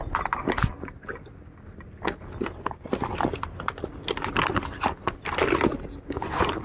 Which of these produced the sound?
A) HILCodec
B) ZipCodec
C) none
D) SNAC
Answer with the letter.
C